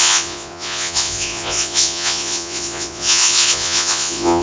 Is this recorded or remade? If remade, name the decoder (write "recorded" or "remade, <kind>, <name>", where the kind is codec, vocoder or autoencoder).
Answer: remade, vocoder, Vocos